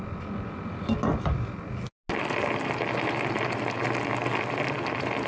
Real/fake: real